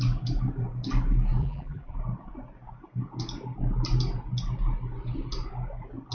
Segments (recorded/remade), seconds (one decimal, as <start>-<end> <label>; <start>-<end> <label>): 0.0-1.4 recorded; 1.4-2.0 remade; 2.0-6.1 recorded

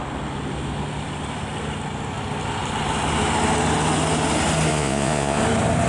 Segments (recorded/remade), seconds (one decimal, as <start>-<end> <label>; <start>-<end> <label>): 0.0-4.7 recorded; 4.7-5.4 remade; 5.4-5.9 recorded

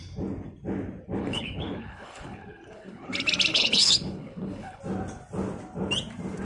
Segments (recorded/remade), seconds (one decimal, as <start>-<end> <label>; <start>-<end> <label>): 0.0-1.2 recorded; 1.2-3.1 remade; 3.1-3.5 recorded; 3.5-4.8 remade; 4.8-6.4 recorded

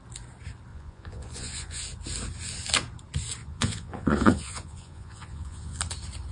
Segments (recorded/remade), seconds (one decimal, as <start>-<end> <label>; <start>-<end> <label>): 0.0-0.7 recorded; 0.7-1.8 remade; 1.8-3.4 recorded; 3.4-5.8 remade; 5.8-6.3 recorded

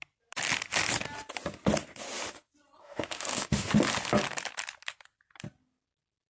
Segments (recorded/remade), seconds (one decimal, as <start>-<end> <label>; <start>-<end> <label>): 0.0-2.8 recorded; 2.8-3.7 remade; 3.7-6.3 recorded

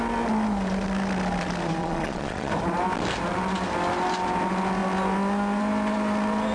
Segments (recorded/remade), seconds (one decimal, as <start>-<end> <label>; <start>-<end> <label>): 0.0-1.8 recorded; 1.8-2.5 remade; 2.5-6.5 recorded

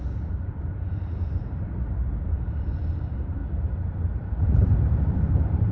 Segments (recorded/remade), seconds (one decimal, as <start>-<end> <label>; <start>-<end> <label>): 0.0-5.7 remade

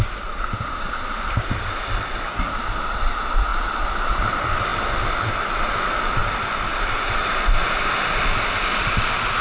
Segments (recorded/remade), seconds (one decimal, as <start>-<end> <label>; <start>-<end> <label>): 0.0-9.4 recorded